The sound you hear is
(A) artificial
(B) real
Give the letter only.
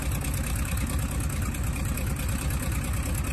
B